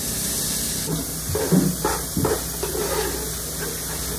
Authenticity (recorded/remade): recorded